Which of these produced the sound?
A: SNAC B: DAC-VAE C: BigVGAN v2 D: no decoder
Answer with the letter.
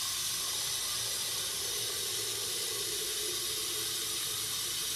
D